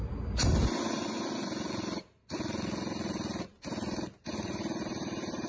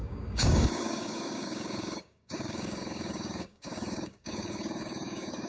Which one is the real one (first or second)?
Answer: first